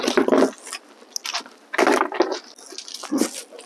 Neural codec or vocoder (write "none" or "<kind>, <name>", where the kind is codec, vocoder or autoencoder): none